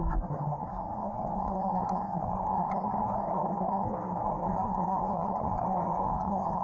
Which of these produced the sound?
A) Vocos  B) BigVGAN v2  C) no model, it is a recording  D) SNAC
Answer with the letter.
D